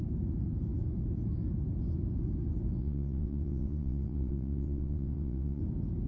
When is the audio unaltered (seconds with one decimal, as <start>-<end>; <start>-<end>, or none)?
0.0-2.8; 5.6-6.1